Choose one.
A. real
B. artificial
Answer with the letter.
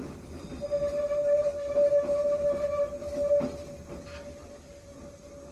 A